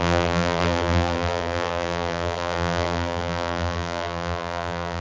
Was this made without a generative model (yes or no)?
no